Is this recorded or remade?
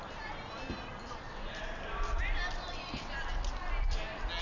recorded